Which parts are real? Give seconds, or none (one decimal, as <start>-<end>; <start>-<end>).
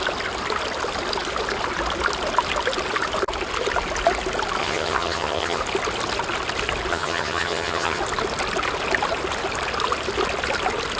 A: 0.0-4.6; 5.6-6.9; 8.0-11.0